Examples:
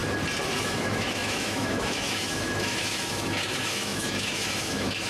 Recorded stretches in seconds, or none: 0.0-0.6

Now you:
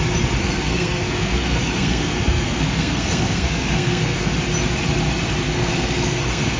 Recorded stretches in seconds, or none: 0.0-0.4; 4.3-5.5

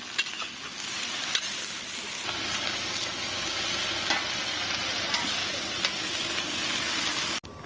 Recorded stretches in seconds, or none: 0.0-7.7

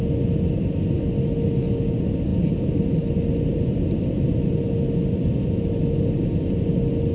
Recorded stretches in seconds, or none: 0.0-7.1